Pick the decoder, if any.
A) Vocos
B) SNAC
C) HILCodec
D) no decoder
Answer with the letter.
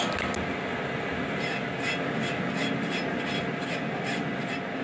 D